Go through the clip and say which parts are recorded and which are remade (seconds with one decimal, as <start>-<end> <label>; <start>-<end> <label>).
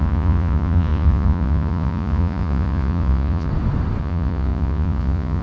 0.0-3.5 remade; 3.5-4.0 recorded; 4.0-5.4 remade